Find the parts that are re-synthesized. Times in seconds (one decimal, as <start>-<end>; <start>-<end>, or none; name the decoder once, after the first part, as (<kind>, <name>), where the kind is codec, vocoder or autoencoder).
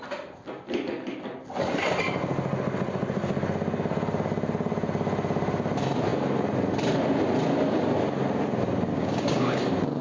8.9-9.6 (codec, DAC)